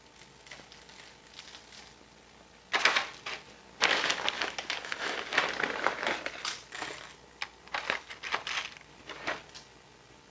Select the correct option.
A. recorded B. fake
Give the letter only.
A